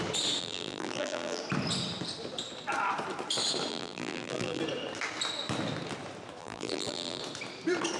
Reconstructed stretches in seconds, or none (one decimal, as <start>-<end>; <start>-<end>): 0.4-1.4; 3.7-4.6; 6.4-7.2